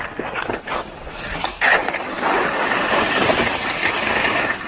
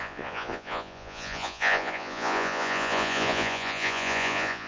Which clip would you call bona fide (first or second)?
first